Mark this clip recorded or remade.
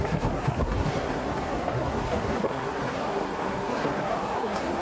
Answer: remade